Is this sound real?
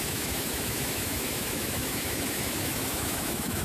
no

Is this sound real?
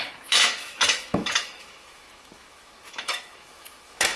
no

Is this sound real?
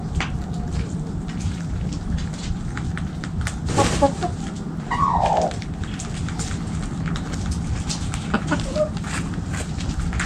yes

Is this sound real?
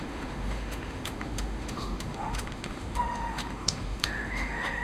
no